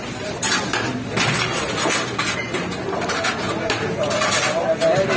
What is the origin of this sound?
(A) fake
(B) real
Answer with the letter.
B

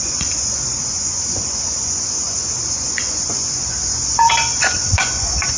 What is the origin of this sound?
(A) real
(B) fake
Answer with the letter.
B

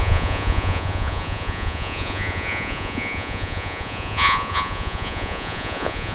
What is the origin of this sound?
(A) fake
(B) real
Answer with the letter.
A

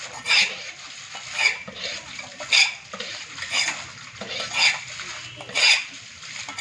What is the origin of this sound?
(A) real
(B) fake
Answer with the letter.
A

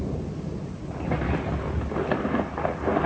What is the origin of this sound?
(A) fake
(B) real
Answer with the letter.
B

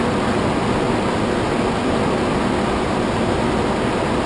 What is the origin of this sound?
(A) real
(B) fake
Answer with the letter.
A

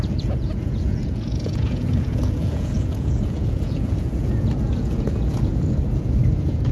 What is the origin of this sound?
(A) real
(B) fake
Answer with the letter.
B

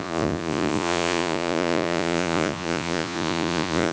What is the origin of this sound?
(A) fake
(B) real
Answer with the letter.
A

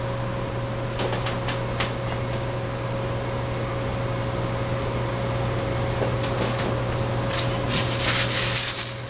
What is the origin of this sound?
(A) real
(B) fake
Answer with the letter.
A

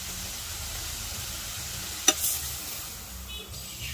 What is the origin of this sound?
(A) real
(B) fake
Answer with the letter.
A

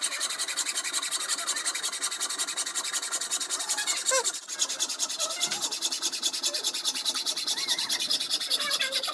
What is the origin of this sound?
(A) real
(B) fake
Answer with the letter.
A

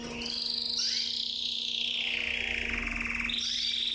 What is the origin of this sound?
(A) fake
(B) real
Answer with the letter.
B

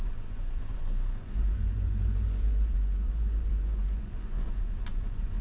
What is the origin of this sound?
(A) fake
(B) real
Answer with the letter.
A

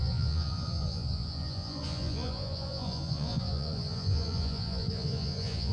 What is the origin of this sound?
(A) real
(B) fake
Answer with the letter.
B